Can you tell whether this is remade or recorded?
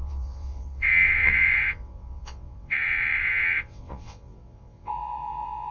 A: remade